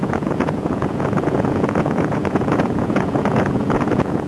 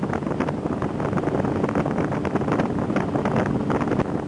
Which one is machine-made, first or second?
first